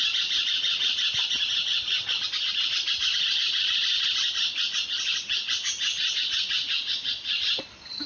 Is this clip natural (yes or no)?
yes